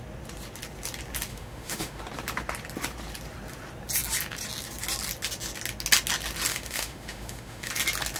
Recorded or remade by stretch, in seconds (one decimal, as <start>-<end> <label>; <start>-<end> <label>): 0.0-1.3 recorded; 1.3-2.0 remade; 2.0-6.5 recorded; 6.5-7.7 remade; 7.7-8.2 recorded